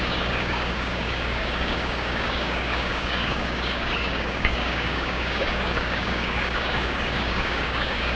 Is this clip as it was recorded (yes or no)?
no